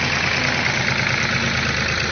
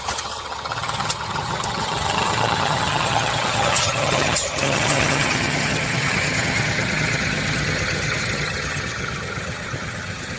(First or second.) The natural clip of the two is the first